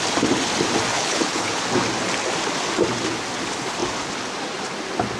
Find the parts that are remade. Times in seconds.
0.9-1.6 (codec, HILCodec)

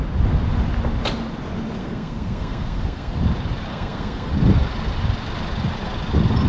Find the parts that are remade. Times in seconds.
1.8-3.2 (codec, SNAC); 3.7-4.3

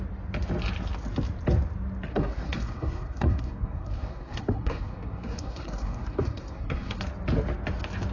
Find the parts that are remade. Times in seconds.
2.1-7.0 (codec, SNAC)

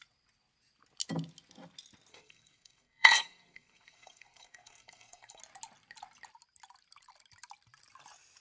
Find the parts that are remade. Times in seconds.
2.1-5.4 (codec, SNAC)

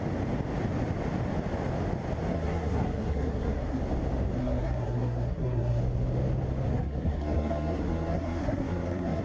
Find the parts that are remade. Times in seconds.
2.3-3.8 (codec, SNAC); 4.4-5.8; 6.7-9.2

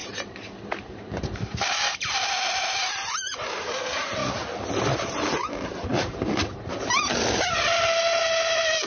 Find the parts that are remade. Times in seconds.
0.0-4.2 (vocoder, BigVGAN v2); 4.8-5.9; 8.0-8.9

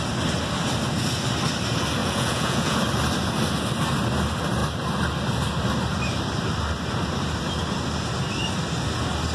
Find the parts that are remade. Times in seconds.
2.0-2.8 (vocoder, Vocos)

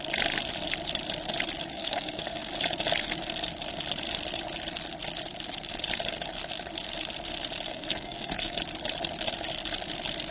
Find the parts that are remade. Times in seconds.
1.7-2.5 (codec, SNAC); 7.7-8.6